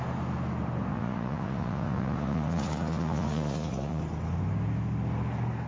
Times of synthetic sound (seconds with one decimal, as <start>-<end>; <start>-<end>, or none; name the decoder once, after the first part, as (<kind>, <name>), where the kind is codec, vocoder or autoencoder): 0.9-4.0 (vocoder, Vocos)

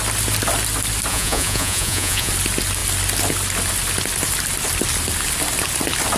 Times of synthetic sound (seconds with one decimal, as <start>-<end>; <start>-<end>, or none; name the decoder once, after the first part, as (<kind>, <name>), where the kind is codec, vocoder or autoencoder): 1.1-2.3 (vocoder, Vocos)

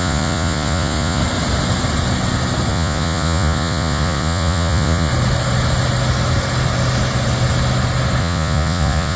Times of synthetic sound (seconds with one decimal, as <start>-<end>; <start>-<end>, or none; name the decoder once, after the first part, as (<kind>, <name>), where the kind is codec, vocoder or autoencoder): 0.0-1.2 (vocoder, Vocos); 2.7-5.1; 8.2-9.2

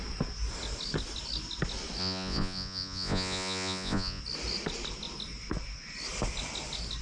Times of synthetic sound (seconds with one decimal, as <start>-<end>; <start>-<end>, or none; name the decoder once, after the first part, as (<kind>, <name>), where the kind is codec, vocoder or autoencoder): 2.0-4.2 (vocoder, Vocos)

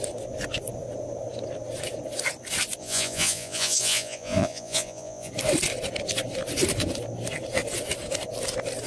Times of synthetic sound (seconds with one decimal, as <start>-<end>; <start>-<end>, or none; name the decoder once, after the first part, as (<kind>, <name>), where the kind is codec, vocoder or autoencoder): 2.8-5.3 (vocoder, Vocos)